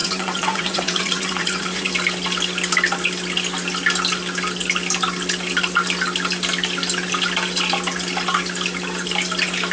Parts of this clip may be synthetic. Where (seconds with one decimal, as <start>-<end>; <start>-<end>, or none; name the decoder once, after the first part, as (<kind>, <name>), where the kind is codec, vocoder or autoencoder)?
0.0-1.9 (vocoder, Vocos)